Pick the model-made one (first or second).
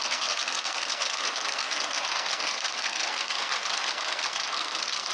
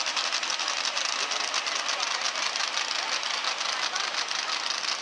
first